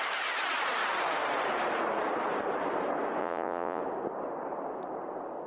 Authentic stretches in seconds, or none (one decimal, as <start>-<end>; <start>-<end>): 0.0-3.2; 3.8-5.5